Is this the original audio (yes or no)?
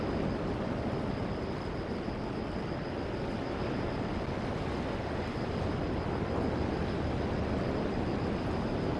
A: yes